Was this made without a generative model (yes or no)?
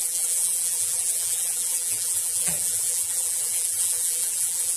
no